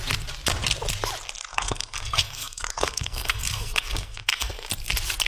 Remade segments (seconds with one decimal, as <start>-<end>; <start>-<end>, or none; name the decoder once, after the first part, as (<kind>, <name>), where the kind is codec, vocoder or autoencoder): 1.5-4.7 (codec, SNAC)

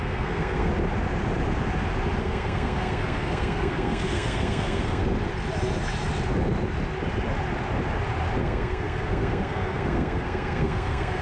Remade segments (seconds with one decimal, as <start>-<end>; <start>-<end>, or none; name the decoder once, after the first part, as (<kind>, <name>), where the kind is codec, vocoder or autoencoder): 0.0-0.7 (codec, SNAC); 2.2-5.0; 8.4-11.2

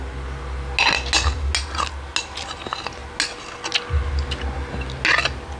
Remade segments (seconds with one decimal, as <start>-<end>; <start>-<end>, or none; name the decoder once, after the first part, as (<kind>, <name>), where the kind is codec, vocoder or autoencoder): none

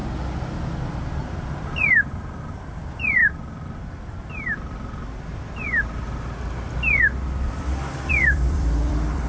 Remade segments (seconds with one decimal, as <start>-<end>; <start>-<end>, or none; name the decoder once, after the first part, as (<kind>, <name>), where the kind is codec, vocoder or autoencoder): 2.4-9.3 (vocoder, BigVGAN v2)